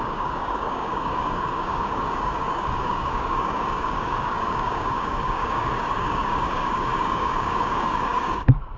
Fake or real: fake